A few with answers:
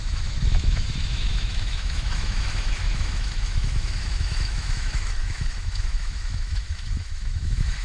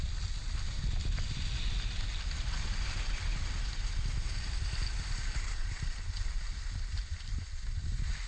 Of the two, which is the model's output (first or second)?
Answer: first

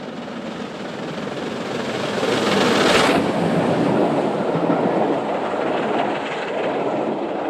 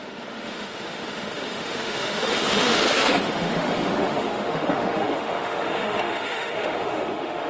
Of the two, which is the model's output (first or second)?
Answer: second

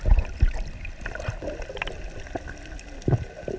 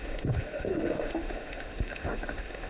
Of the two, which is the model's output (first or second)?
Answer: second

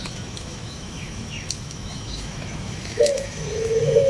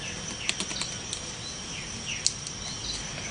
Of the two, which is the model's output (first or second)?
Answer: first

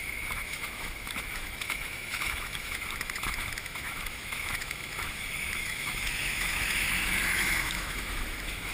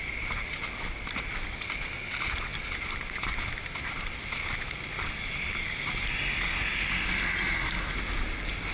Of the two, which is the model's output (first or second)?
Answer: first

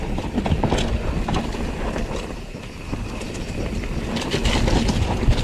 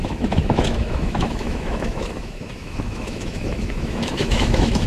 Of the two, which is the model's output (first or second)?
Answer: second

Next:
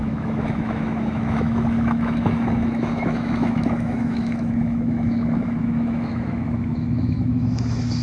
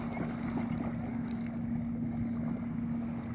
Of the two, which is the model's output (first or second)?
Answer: first